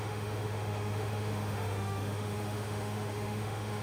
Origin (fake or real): fake